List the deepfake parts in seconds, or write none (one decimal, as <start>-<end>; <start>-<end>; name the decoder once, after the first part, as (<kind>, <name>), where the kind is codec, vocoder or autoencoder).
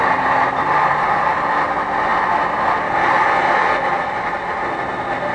none